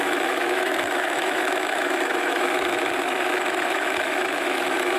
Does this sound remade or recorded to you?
remade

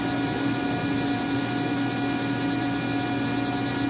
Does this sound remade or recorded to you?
recorded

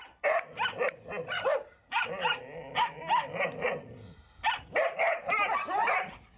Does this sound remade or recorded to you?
recorded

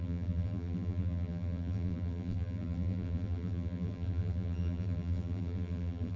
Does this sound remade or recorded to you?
remade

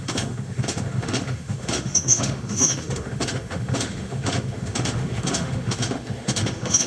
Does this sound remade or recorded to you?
remade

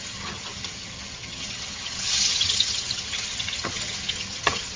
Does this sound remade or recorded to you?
remade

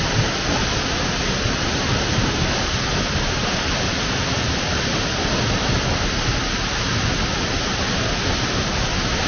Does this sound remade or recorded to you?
recorded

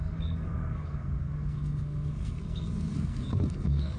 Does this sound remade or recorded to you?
remade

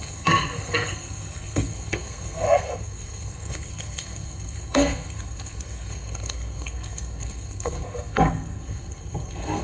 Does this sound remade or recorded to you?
remade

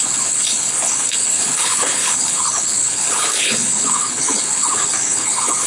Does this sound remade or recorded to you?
remade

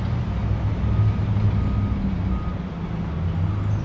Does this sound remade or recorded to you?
recorded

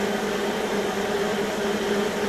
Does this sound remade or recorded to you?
recorded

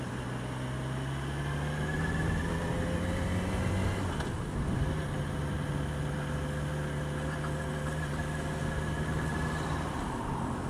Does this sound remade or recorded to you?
recorded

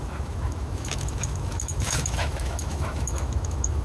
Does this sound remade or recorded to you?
remade